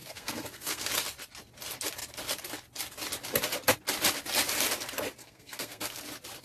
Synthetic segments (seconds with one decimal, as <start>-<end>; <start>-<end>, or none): 0.0-0.9; 5.2-6.0